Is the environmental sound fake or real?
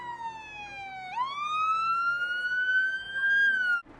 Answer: real